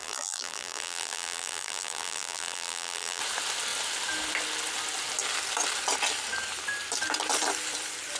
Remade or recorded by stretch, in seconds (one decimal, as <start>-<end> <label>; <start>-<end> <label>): 0.0-3.2 remade; 3.2-8.2 recorded